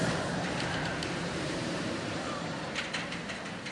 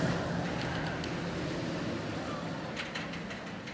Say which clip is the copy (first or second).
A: first